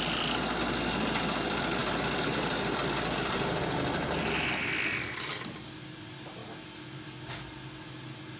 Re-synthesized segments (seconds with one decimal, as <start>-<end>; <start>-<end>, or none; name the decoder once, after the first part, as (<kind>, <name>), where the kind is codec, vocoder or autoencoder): 1.8-3.6 (vocoder, BigVGAN v2); 4.9-6.0